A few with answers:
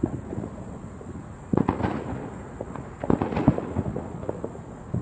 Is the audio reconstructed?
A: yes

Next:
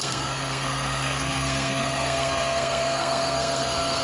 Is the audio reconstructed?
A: yes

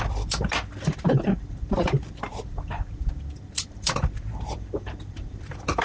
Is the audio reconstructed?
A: yes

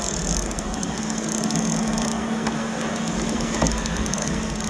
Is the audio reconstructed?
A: yes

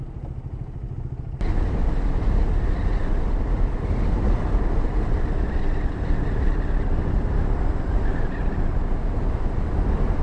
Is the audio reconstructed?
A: no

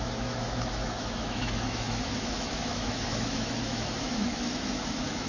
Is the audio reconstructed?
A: yes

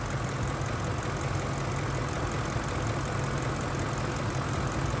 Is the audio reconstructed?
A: no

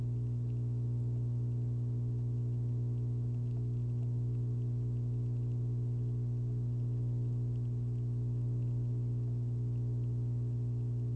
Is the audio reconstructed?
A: no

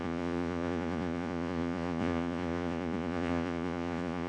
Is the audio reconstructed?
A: yes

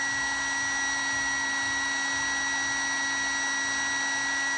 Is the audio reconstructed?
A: no